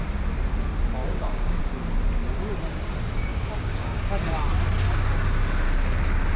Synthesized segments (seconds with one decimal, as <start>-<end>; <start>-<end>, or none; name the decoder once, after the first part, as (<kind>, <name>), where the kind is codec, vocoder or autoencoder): 1.0-1.6 (codec, DAC); 3.3-4.0